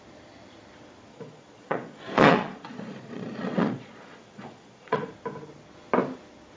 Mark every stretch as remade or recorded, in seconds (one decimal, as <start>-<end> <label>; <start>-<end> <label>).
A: 0.0-1.1 recorded; 1.1-5.1 remade; 5.1-6.6 recorded